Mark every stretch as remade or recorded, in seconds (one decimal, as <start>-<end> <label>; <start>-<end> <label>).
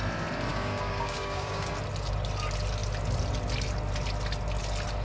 0.0-0.5 recorded; 0.5-1.7 remade; 1.7-5.0 recorded